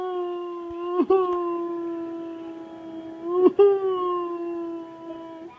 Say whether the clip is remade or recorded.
recorded